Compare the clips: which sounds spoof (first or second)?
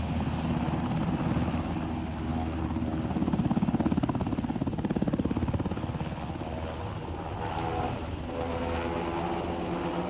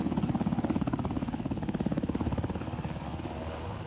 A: second